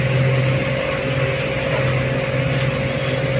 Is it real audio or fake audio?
real